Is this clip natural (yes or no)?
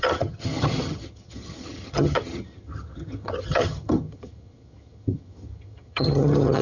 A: no